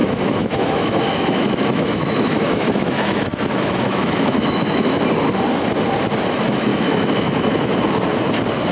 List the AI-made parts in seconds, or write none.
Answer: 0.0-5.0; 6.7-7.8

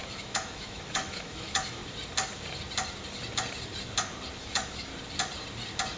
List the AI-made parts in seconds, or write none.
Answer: 0.0-1.8; 4.4-4.9

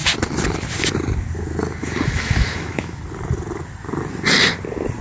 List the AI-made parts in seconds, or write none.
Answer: 1.8-3.0